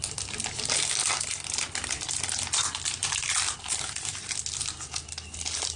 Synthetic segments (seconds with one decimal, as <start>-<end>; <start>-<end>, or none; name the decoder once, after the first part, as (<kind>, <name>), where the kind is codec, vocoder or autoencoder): none